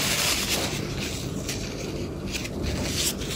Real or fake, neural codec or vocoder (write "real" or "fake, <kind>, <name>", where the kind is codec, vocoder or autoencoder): real